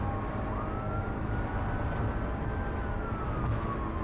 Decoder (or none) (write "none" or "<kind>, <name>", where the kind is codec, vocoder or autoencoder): none